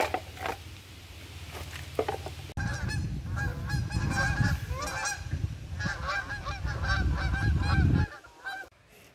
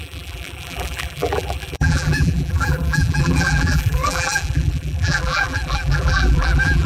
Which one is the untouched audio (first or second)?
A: first